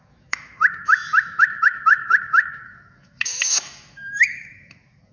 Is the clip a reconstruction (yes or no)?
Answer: yes